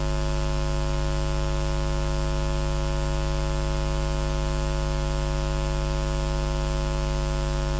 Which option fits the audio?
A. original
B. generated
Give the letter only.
A